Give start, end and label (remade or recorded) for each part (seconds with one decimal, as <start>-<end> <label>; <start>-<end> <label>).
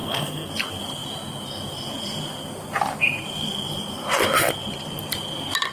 0.0-0.5 remade; 0.5-5.7 recorded